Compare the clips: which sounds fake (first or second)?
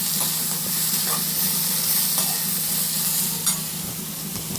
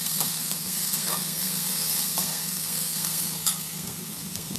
second